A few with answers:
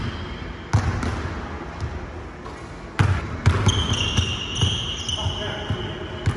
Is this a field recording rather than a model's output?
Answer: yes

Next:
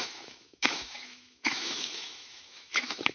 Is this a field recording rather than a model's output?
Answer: no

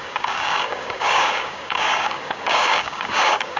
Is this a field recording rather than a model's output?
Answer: no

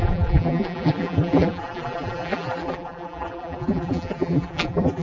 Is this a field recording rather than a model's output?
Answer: no